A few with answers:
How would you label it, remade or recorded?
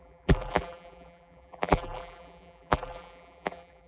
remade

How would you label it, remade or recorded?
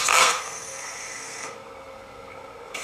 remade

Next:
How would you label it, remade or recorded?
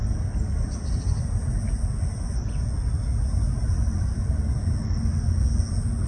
recorded